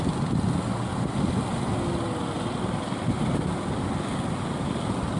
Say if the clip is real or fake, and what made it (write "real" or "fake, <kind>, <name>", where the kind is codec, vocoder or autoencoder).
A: real